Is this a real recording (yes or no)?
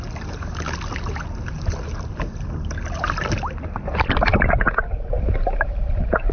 yes